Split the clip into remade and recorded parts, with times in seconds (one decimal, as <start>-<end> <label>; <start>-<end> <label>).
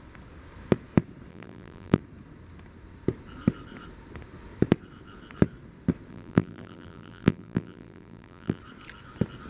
0.0-1.3 recorded; 1.3-2.0 remade; 2.0-6.1 recorded; 6.1-8.6 remade; 8.6-9.5 recorded